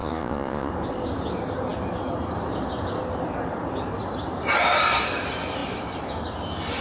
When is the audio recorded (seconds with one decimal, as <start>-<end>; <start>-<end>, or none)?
0.7-6.8